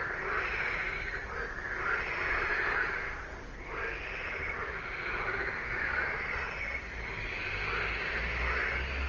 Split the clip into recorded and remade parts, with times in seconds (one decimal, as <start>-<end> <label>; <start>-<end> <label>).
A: 0.0-9.1 recorded